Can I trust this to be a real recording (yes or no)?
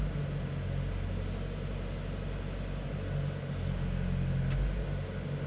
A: yes